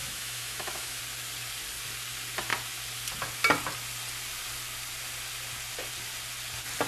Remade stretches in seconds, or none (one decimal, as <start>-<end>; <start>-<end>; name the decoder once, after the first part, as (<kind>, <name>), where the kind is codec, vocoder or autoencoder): 0.0-1.0 (autoencoder, DAC-VAE)